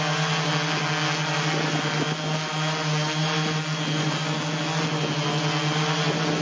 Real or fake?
real